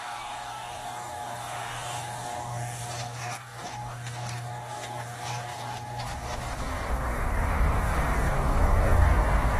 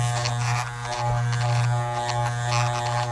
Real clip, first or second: second